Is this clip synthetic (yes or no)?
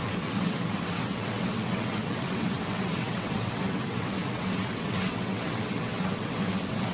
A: yes